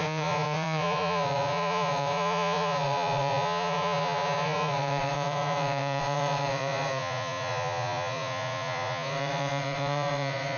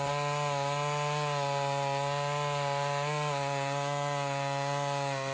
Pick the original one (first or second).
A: second